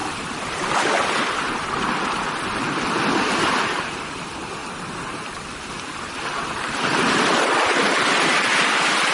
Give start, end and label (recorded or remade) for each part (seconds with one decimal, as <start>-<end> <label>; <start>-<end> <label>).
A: 0.0-9.1 recorded